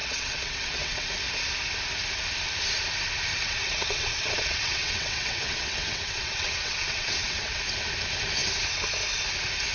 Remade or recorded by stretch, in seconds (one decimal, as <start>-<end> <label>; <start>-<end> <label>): 0.0-1.1 remade; 1.1-3.3 recorded; 3.3-7.6 remade; 7.6-9.7 recorded